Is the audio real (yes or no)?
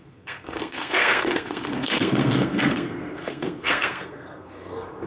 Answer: no